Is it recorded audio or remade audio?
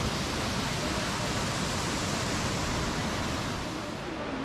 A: recorded